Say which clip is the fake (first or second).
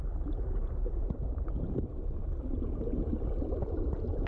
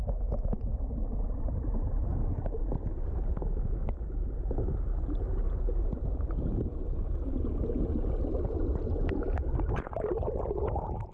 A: first